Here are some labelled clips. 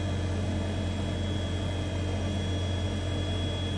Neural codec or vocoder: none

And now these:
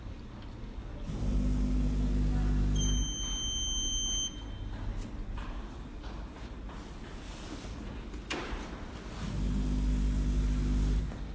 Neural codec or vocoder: none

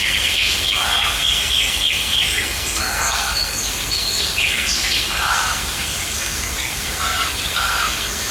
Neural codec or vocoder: codec, SNAC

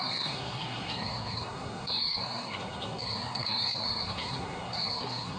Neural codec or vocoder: codec, SNAC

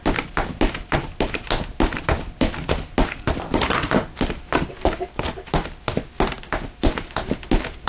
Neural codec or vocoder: none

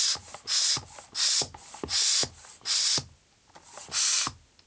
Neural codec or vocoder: none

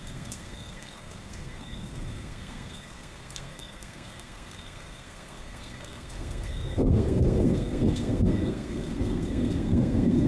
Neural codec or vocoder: codec, SNAC